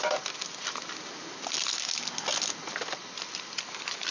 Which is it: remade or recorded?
recorded